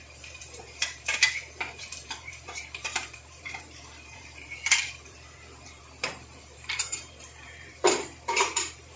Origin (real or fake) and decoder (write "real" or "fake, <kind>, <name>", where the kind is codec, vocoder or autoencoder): fake, vocoder, BigVGAN v2